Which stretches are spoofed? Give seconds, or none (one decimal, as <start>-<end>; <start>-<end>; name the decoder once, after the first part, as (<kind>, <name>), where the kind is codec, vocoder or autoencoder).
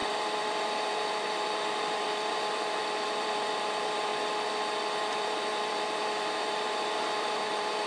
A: 0.0-4.1 (vocoder, BigVGAN v2); 5.0-7.9